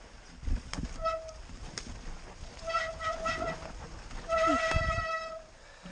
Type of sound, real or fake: real